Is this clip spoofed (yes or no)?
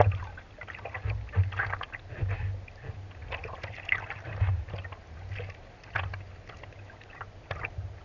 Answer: no